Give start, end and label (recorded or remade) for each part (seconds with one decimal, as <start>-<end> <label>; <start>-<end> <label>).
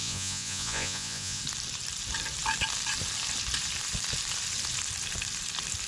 0.0-1.4 remade; 1.4-5.9 recorded